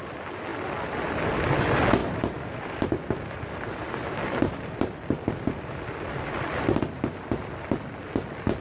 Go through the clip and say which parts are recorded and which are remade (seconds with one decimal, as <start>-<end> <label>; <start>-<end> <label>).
0.0-0.5 recorded; 0.5-1.4 remade; 1.4-2.0 recorded; 2.0-6.8 remade; 6.8-8.6 recorded